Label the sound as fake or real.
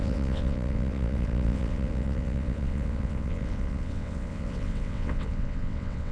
fake